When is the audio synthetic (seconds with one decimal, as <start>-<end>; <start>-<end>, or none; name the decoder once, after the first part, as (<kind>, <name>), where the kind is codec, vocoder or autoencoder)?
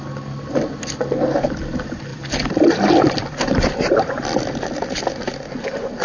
2.1-4.4 (vocoder, BigVGAN v2)